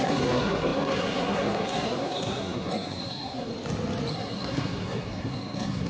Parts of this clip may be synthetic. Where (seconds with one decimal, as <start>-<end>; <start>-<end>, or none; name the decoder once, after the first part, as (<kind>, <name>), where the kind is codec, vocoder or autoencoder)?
0.0-3.5 (codec, SNAC); 4.1-5.9